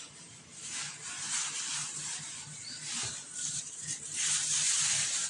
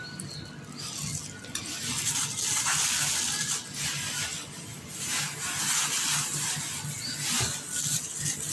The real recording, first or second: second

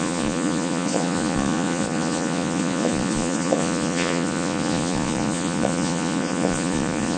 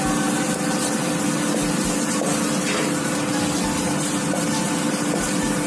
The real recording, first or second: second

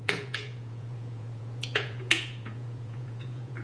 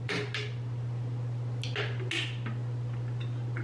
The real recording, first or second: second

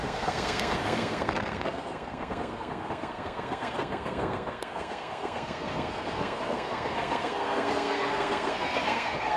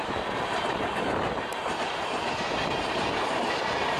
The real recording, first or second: second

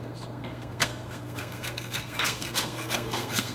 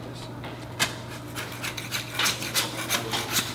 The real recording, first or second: second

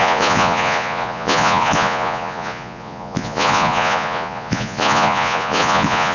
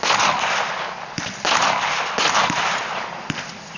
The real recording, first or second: second